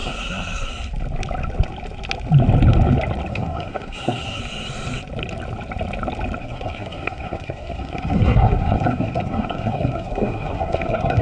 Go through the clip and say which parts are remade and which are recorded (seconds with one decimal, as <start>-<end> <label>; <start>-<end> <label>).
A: 0.0-0.7 remade; 0.7-3.3 recorded; 3.3-4.4 remade; 4.4-6.4 recorded; 6.4-11.2 remade